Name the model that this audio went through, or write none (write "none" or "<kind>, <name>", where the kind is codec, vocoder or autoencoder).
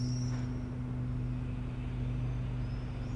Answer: none